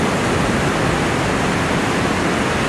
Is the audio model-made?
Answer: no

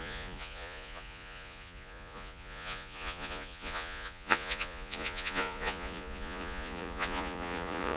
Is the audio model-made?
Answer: yes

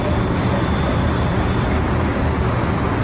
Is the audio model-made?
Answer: no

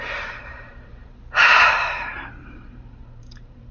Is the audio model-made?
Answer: yes